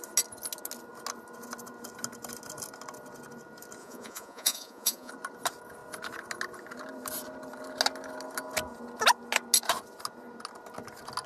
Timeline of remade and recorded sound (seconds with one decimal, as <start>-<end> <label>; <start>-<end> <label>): 0.0-3.8 recorded; 3.8-5.1 remade; 5.1-11.3 recorded